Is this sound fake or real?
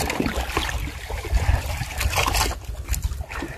real